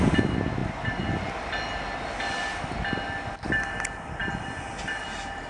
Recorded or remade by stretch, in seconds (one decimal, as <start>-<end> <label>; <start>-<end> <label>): 0.0-5.5 recorded